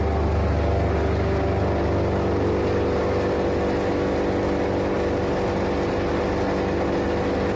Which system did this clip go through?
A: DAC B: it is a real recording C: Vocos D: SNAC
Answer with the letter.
B